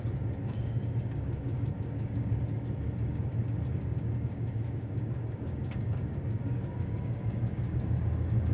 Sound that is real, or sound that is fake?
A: fake